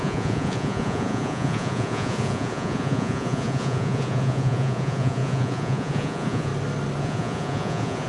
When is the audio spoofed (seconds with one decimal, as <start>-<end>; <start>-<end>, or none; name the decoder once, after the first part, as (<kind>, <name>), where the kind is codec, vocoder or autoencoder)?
0.0-6.5 (vocoder, Vocos); 7.0-8.1